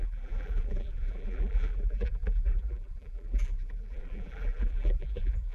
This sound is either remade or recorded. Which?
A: remade